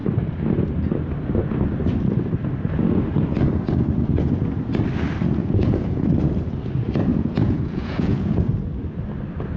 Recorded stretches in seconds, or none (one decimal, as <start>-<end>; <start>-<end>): 0.0-5.4; 6.0-7.1; 8.5-9.6